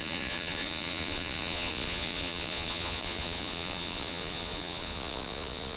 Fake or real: fake